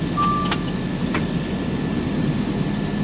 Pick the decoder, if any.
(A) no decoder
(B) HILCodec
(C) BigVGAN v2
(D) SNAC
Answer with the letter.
A